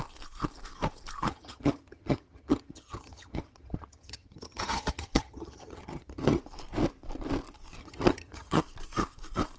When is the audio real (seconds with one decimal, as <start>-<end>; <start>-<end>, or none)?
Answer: 0.0-1.3; 6.4-7.8; 8.6-9.6